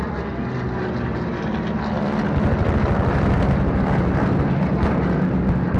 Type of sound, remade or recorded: recorded